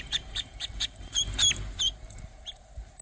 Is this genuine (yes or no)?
no